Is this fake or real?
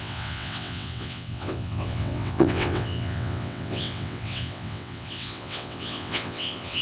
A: fake